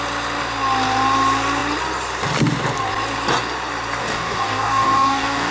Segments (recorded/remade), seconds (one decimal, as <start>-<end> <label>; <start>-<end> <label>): 0.0-4.0 recorded; 4.0-5.5 remade